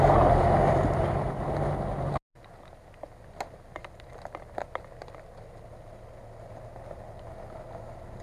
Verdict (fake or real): real